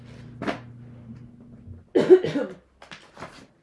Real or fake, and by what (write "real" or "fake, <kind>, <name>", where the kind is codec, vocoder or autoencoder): real